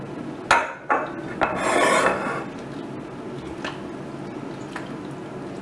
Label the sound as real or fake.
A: real